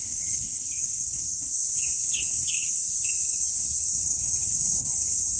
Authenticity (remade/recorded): remade